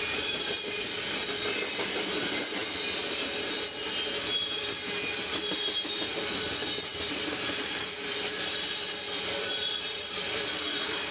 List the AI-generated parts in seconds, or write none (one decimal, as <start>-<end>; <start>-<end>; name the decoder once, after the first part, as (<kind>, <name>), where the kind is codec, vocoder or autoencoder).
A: none